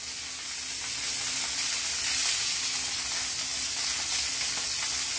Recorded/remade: recorded